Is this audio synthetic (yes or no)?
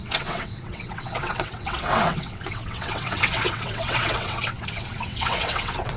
yes